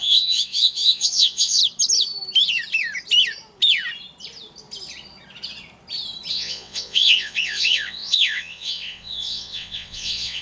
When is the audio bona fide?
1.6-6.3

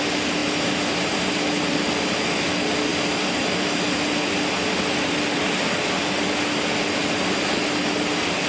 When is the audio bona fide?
0.0-8.5

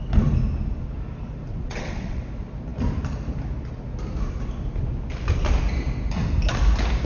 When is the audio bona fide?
0.0-1.5; 2.2-7.0

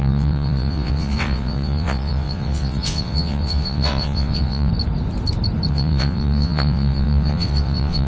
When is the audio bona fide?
4.7-5.7